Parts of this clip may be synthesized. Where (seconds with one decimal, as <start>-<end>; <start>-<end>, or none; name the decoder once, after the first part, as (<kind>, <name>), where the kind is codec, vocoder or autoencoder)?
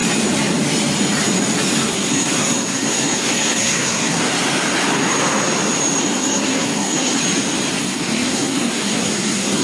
1.9-4.3 (codec, SNAC); 6.0-7.2; 7.8-9.6